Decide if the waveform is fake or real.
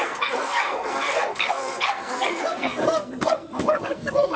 fake